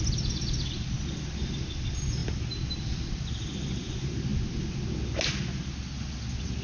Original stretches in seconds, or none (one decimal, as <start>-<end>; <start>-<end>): 0.0-6.6